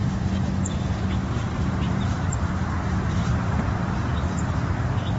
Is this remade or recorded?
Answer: remade